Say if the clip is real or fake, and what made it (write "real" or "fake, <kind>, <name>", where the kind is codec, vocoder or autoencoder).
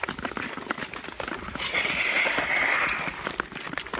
real